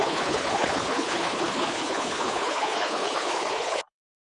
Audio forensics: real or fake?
fake